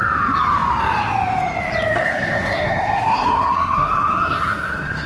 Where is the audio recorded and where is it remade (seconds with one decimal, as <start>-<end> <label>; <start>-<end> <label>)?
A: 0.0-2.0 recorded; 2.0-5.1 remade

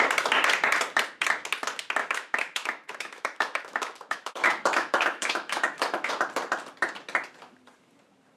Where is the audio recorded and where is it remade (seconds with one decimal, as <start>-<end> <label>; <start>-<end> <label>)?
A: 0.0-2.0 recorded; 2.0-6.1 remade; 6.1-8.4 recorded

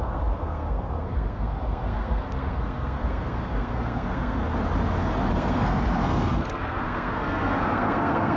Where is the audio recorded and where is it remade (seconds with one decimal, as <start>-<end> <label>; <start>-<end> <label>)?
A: 0.0-4.4 remade; 4.4-5.3 recorded; 5.3-8.4 remade

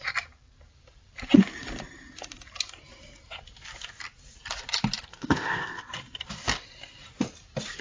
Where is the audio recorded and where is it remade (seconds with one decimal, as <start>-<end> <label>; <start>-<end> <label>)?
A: 0.0-5.1 recorded; 5.1-5.8 remade; 5.8-7.8 recorded